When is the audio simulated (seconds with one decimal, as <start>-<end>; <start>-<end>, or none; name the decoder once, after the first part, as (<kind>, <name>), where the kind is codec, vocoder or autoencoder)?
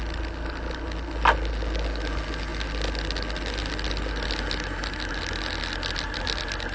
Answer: none